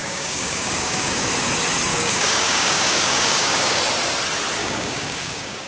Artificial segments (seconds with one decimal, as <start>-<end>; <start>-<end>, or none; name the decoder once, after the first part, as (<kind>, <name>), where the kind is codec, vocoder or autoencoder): 0.0-1.3 (codec, DAC); 1.9-3.8; 4.6-5.7